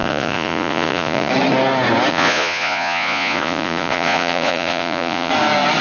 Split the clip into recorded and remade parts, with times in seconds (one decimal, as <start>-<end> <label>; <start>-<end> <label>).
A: 0.0-1.3 remade; 1.3-2.1 recorded; 2.1-5.3 remade; 5.3-5.8 recorded